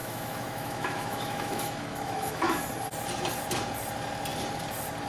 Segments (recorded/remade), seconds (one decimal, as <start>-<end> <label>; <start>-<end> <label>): 0.0-2.6 remade; 2.6-5.1 recorded